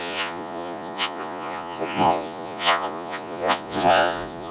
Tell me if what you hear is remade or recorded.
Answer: remade